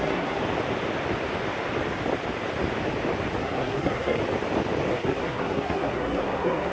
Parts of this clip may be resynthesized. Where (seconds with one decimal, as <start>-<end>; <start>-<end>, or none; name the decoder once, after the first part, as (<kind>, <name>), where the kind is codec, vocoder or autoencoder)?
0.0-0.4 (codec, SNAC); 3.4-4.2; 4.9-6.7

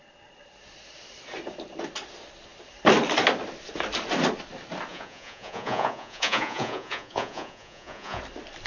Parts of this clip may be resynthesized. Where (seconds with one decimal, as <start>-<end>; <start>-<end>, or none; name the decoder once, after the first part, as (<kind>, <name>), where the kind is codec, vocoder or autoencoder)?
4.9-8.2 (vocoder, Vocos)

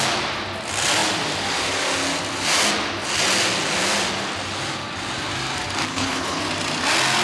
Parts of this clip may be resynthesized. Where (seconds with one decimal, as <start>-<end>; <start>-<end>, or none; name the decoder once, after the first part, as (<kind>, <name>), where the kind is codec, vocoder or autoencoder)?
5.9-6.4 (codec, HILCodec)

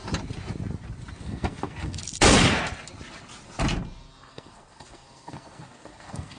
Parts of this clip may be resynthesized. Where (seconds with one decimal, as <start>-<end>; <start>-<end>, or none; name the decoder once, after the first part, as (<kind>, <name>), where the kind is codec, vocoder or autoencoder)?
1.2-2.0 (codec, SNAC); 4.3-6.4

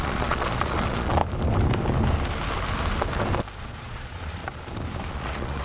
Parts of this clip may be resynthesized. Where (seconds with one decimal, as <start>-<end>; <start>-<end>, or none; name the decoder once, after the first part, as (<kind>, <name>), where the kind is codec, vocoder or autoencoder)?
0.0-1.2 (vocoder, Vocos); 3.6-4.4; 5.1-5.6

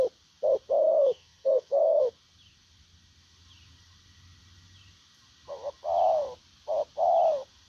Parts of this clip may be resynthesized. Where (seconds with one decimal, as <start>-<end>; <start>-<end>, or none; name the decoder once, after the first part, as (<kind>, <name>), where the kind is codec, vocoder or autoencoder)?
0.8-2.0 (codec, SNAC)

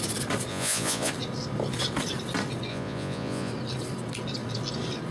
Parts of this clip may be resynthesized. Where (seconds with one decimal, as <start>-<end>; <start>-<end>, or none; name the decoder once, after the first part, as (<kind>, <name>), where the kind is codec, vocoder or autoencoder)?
0.5-1.1 (vocoder, Vocos); 2.7-3.5

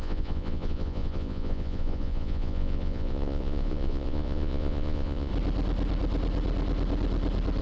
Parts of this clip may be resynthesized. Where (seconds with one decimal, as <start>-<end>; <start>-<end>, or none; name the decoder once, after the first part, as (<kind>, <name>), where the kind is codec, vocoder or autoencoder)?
0.0-5.3 (vocoder, Vocos)